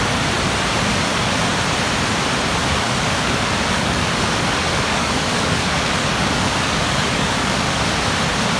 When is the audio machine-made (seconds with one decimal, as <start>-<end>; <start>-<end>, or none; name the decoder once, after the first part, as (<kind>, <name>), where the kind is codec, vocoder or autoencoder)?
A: 0.9-1.5 (codec, DAC); 2.6-7.8